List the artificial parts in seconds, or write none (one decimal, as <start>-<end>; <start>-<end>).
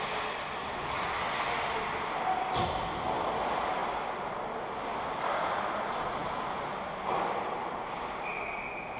none